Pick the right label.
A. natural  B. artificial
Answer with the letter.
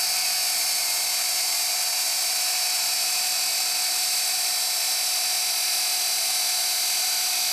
A